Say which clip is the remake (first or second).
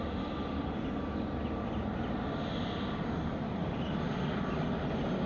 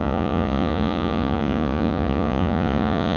second